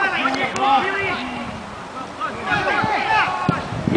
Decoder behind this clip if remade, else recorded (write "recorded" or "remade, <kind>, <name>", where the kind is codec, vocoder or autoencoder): remade, vocoder, BigVGAN v2